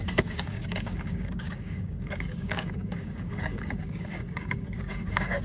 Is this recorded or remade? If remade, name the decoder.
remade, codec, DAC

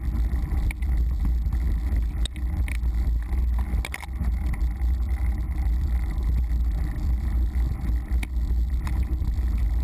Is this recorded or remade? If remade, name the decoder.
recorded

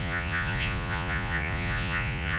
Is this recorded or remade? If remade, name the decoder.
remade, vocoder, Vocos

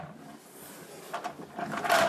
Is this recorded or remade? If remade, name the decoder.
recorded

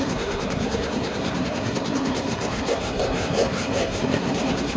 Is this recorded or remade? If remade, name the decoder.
remade, codec, SNAC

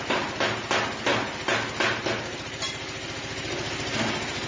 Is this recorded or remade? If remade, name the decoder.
recorded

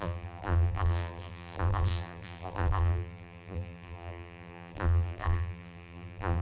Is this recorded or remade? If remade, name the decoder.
remade, vocoder, BigVGAN v2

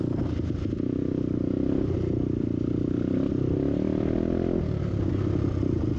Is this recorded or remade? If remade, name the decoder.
recorded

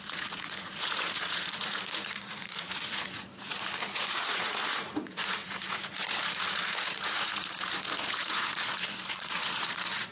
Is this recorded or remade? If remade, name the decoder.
remade, vocoder, Vocos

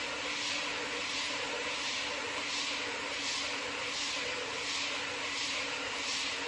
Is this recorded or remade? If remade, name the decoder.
recorded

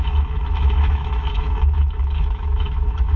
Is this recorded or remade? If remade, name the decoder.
remade, autoencoder, DAC-VAE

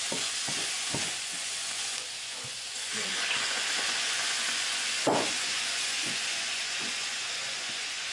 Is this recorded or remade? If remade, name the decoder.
remade, vocoder, Vocos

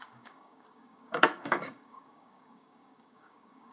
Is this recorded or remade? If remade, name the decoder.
remade, codec, DAC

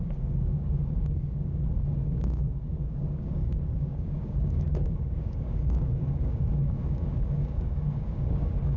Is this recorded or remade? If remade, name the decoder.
remade, codec, DAC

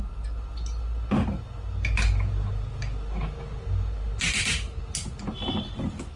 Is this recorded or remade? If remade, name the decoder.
recorded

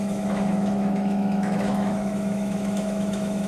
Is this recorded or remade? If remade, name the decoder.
remade, autoencoder, DAC-VAE